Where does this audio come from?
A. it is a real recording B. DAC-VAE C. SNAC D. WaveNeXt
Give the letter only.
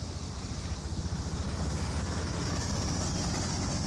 A